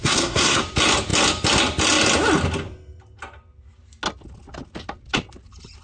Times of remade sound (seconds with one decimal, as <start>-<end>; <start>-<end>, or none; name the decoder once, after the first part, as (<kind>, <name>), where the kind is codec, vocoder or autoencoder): 0.0-0.6 (codec, SNAC)